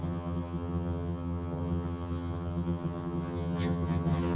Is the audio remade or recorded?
remade